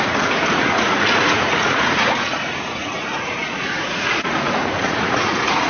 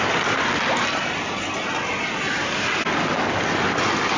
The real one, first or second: second